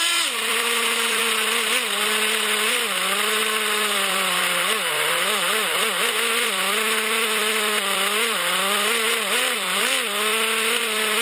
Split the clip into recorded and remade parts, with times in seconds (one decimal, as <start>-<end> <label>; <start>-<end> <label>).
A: 0.0-1.2 remade; 1.2-2.7 recorded; 2.7-11.2 remade

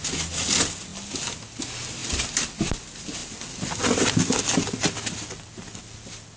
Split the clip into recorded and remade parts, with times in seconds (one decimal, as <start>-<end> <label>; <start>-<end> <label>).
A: 0.0-0.9 recorded; 0.9-1.6 remade; 1.6-2.0 recorded; 2.0-2.6 remade; 2.6-3.2 recorded; 3.2-5.8 remade; 5.8-6.4 recorded

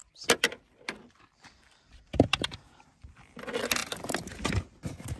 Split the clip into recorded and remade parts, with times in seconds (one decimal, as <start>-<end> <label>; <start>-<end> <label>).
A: 0.0-2.9 remade; 2.9-3.8 recorded; 3.8-4.3 remade; 4.3-5.2 recorded

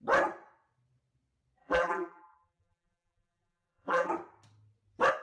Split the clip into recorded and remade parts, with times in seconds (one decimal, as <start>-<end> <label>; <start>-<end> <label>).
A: 0.0-1.6 recorded; 1.6-4.1 remade; 4.1-5.2 recorded

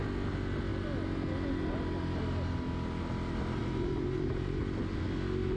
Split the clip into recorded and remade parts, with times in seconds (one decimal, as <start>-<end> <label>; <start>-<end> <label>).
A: 0.0-3.6 recorded; 3.6-4.6 remade; 4.6-5.6 recorded